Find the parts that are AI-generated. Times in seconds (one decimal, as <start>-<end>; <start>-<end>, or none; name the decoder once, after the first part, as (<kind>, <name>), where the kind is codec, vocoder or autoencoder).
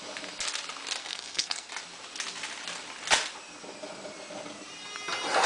1.0-1.7 (codec, SNAC)